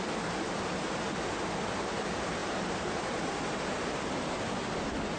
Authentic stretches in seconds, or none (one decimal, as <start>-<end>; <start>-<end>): 0.0-2.4; 3.3-5.2